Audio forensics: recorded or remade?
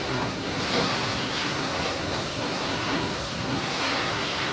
remade